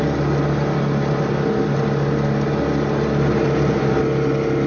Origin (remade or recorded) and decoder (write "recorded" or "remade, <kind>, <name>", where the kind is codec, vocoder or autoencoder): recorded